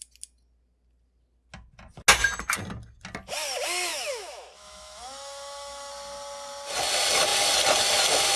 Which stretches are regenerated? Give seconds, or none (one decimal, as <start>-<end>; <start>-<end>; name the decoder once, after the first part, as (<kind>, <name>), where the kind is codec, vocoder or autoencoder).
3.9-5.9 (autoencoder, DAC-VAE)